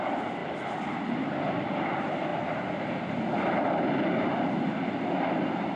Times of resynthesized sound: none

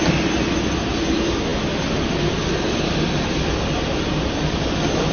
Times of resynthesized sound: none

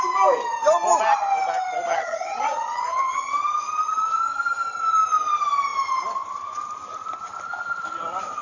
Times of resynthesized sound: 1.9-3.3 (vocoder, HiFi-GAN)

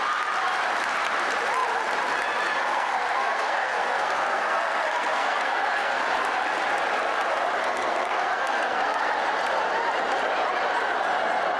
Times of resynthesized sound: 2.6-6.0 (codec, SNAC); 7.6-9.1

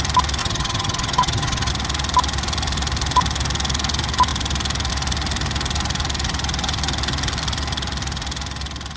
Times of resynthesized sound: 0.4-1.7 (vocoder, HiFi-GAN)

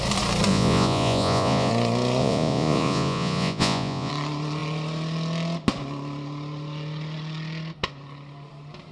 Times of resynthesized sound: 0.5-1.7 (vocoder, Vocos); 2.2-4.1

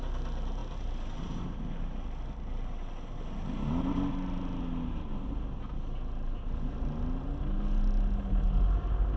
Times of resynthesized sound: none